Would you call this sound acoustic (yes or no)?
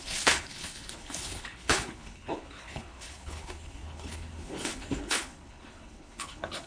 no